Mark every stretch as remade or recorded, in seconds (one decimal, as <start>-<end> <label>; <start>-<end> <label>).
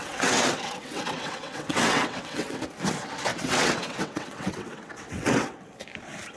0.0-2.6 remade; 2.6-3.3 recorded; 3.3-5.6 remade; 5.6-6.4 recorded